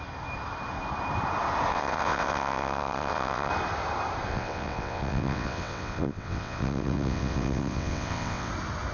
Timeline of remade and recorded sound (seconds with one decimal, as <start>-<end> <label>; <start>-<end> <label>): 0.0-1.7 recorded; 1.7-3.5 remade; 3.5-4.3 recorded; 4.3-8.5 remade; 8.5-8.9 recorded